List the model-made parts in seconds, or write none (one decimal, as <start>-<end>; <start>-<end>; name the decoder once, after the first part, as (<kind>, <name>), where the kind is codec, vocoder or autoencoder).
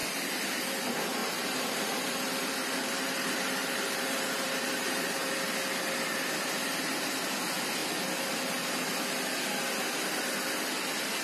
1.2-5.3 (vocoder, BigVGAN v2)